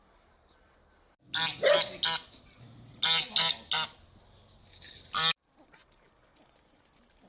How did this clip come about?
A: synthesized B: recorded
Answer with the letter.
B